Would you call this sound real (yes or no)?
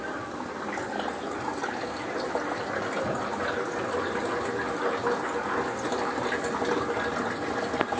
yes